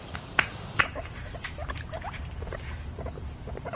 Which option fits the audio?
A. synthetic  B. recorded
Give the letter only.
A